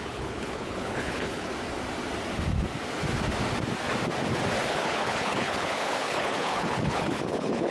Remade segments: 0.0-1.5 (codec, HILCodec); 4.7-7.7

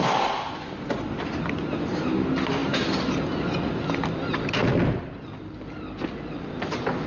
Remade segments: none

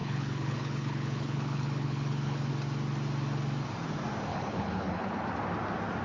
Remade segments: 0.0-2.5 (codec, HILCodec); 4.3-5.1